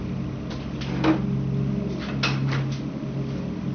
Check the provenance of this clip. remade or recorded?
recorded